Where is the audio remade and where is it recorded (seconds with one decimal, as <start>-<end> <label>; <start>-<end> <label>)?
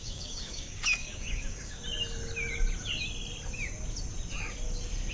0.0-1.8 remade; 1.8-5.1 recorded